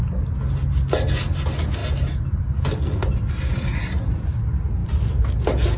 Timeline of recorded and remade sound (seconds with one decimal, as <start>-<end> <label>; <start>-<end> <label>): 0.0-5.8 recorded